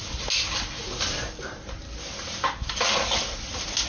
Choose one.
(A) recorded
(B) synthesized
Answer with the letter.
A